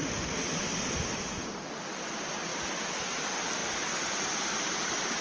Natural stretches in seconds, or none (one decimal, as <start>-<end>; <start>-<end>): 0.0-5.2